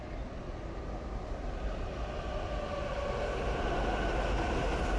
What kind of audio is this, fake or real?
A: real